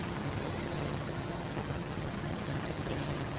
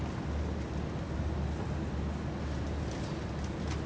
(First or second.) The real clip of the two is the second